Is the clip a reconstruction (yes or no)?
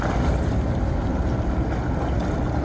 no